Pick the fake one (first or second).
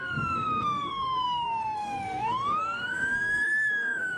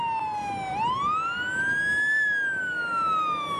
first